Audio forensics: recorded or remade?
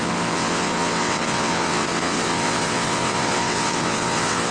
remade